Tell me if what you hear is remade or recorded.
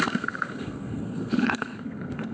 remade